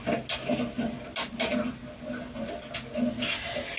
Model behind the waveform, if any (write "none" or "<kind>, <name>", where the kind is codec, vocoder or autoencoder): none